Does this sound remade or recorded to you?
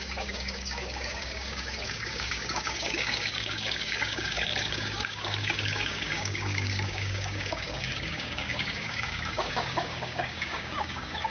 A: remade